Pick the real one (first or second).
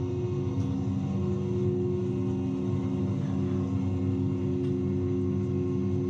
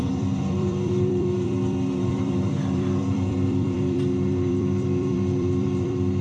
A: first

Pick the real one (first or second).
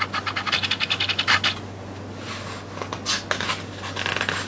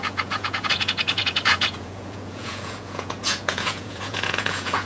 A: first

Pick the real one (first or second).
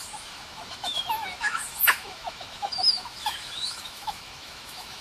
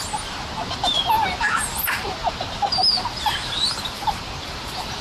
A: second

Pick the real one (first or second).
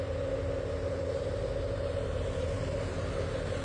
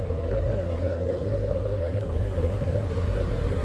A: first